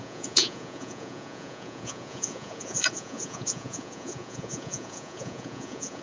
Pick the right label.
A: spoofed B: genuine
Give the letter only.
A